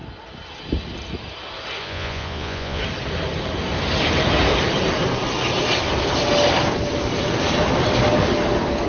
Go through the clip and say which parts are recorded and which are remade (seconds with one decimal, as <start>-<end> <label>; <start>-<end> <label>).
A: 0.0-1.8 recorded; 1.8-2.8 remade; 2.8-8.9 recorded